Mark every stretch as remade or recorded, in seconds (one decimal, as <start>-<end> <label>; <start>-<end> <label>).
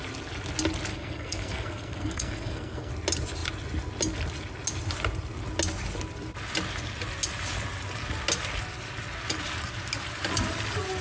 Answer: 0.0-0.9 recorded; 0.9-2.9 remade; 2.9-11.0 recorded